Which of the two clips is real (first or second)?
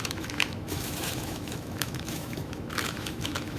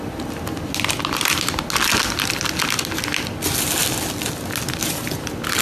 second